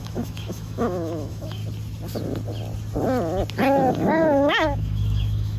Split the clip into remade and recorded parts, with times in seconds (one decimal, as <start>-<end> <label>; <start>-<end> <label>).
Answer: 0.0-1.6 remade; 1.6-3.9 recorded; 3.9-5.6 remade